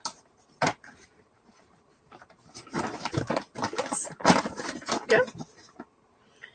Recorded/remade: remade